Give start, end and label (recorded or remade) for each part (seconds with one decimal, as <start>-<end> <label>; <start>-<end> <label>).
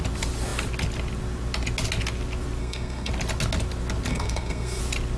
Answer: 0.0-2.6 recorded; 2.6-3.1 remade; 3.1-4.1 recorded; 4.1-4.8 remade; 4.8-5.2 recorded